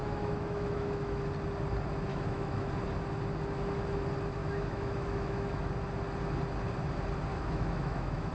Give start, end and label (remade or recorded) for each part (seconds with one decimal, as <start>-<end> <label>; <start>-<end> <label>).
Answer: 0.0-1.3 remade; 1.3-2.1 recorded; 2.1-2.7 remade; 2.7-4.4 recorded; 4.4-5.7 remade; 5.7-7.3 recorded; 7.3-8.3 remade